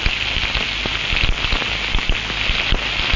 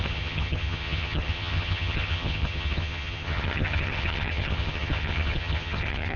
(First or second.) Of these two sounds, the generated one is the second